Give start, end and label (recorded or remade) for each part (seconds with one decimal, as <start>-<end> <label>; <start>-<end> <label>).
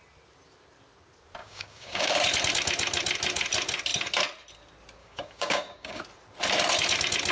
0.0-1.4 recorded; 1.4-2.1 remade; 2.1-5.0 recorded; 5.0-6.0 remade; 6.0-7.3 recorded